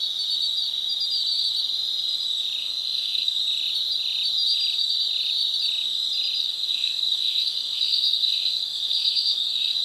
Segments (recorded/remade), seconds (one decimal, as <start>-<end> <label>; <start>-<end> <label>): 0.0-2.6 recorded; 2.6-3.4 remade; 3.4-6.4 recorded; 6.4-9.8 remade